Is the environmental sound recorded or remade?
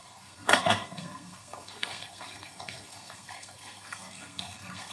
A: remade